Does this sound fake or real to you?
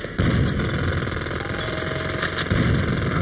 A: real